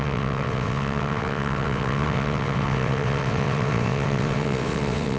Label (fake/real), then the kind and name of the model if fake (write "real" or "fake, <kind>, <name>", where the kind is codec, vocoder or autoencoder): fake, vocoder, WaveNeXt